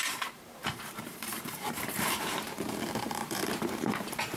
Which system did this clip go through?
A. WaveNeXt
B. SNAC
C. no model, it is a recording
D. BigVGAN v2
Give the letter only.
D